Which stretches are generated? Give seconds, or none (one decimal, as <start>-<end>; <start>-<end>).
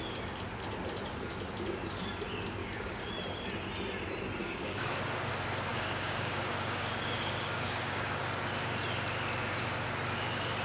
2.6-3.1; 4.4-5.3; 5.7-8.2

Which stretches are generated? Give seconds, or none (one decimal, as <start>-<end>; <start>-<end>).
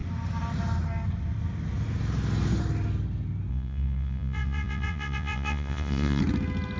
3.5-6.2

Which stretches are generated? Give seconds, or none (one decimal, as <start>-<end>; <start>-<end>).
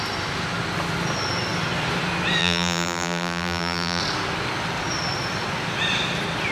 2.4-4.0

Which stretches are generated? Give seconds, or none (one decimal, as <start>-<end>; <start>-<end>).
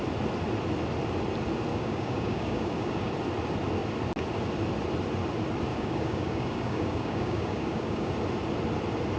1.7-3.1; 5.7-8.1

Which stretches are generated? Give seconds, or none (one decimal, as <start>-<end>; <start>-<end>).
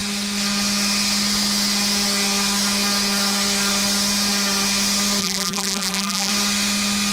5.2-6.3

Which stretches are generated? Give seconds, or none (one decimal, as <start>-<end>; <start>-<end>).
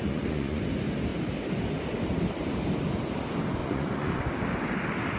0.0-0.6; 3.6-4.2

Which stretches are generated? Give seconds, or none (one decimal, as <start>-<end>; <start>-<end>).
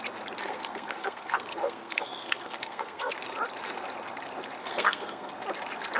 0.4-3.1; 4.6-5.3